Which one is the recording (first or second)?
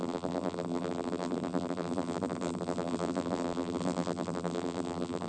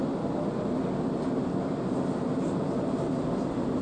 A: second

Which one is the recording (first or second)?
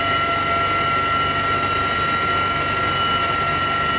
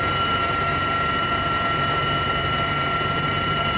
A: first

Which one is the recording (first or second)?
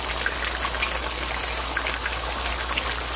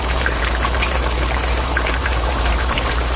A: first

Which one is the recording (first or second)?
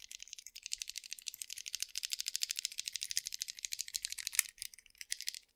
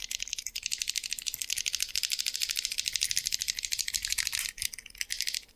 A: second